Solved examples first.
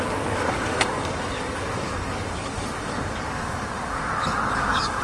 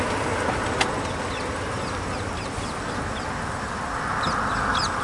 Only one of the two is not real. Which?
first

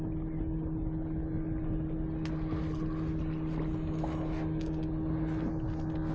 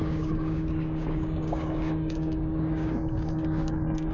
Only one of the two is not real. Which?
second